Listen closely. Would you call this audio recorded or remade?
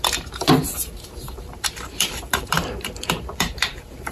remade